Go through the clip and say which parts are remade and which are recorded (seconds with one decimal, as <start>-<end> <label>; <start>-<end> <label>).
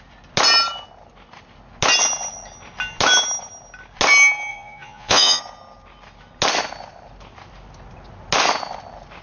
0.0-4.5 recorded; 4.5-5.4 remade; 5.4-9.2 recorded